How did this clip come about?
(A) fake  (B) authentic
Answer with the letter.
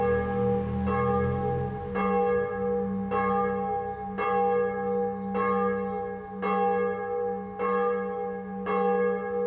B